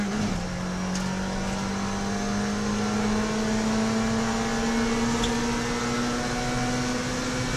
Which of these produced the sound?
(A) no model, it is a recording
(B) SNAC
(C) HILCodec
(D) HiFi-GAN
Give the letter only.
A